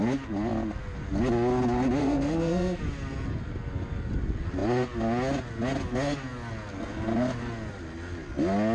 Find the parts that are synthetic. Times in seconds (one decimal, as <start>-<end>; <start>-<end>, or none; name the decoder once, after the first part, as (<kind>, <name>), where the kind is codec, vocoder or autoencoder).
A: 2.0-2.8 (codec, SNAC)